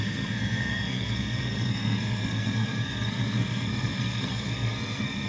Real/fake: fake